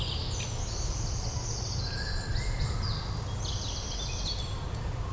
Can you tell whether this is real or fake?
real